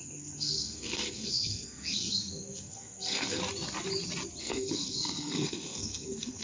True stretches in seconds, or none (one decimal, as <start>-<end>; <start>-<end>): 3.4-4.4